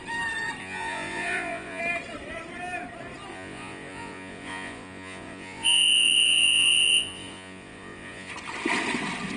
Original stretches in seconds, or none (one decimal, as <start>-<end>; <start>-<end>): 0.0-0.6; 1.8-3.3; 8.3-9.4